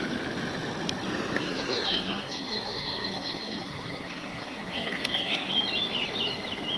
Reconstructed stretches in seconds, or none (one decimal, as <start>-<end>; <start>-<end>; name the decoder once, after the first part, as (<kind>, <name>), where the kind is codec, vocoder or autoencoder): 1.4-5.5 (codec, SNAC)